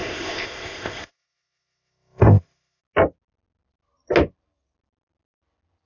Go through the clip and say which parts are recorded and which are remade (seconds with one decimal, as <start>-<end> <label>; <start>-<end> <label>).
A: 0.0-2.8 remade; 2.8-5.9 recorded